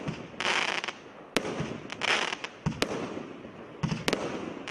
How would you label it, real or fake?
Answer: real